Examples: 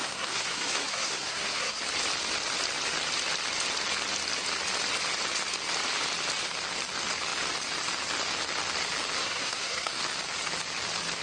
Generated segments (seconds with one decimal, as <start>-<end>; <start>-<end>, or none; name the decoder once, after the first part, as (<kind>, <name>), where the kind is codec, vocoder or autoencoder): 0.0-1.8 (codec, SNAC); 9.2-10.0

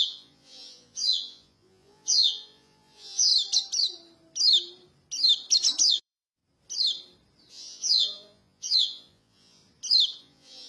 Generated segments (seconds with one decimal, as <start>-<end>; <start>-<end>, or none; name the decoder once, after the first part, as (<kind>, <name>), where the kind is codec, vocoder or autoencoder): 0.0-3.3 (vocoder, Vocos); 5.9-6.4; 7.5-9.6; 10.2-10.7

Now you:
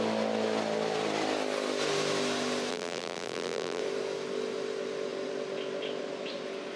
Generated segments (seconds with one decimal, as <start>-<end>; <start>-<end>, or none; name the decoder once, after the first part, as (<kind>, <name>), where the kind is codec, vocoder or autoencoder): 2.7-3.8 (vocoder, BigVGAN v2)

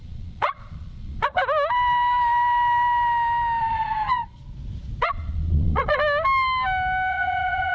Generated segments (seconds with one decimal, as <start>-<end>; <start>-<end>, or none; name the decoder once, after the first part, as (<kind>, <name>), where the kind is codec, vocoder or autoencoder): 0.0-1.4 (vocoder, Vocos); 3.6-4.4; 5.0-6.0; 7.1-7.7

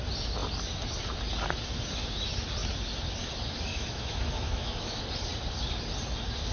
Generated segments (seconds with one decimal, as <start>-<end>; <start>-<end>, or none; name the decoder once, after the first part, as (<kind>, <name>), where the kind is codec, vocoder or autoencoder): 3.7-5.0 (autoencoder, DAC-VAE)

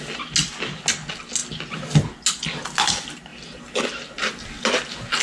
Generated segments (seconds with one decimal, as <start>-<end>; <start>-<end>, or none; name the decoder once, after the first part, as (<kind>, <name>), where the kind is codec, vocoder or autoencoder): none